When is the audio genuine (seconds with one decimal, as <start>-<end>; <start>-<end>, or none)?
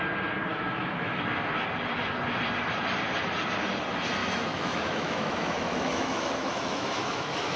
0.0-0.5; 1.2-4.2